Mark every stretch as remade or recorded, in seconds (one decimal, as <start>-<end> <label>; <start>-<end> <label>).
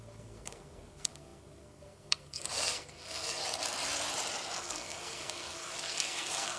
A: 0.0-3.4 remade; 3.4-4.6 recorded; 4.6-6.6 remade